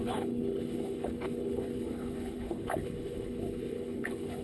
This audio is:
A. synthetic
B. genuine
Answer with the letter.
A